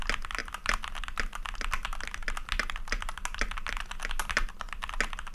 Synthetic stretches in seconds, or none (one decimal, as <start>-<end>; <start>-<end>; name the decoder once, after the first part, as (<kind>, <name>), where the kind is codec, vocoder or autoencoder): none